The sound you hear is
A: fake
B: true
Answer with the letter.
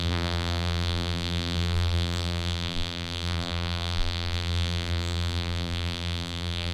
A